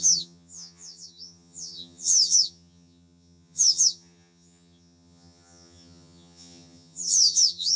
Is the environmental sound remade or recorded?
remade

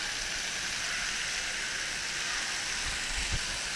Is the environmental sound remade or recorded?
recorded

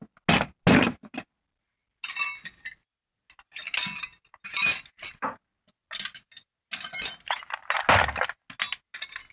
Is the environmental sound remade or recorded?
recorded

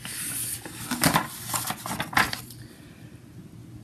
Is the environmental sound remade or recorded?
recorded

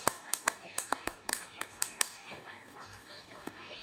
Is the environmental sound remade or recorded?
remade